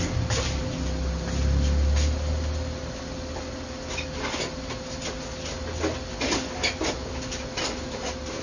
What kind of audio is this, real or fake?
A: real